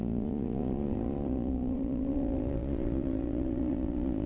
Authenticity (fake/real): fake